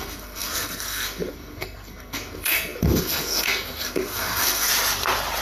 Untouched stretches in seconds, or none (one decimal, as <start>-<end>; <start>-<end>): 4.7-5.4